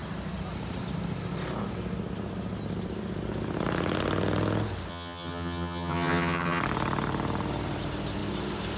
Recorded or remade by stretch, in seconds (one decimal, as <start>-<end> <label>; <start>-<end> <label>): 0.0-4.9 recorded; 4.9-6.6 remade; 6.6-8.8 recorded

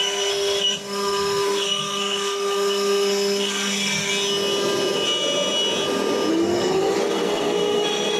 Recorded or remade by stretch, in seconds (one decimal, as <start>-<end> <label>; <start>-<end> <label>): 0.0-4.1 remade; 4.1-6.3 recorded; 6.3-8.2 remade

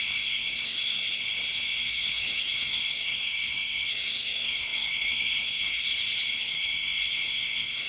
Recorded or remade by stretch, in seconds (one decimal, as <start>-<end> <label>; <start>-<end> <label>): 0.0-1.2 remade; 1.2-1.9 recorded; 1.9-5.9 remade; 5.9-6.4 recorded; 6.4-7.9 remade

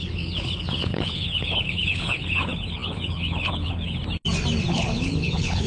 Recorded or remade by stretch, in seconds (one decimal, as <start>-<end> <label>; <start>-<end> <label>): 0.0-4.0 remade; 4.0-4.7 recorded; 4.7-5.7 remade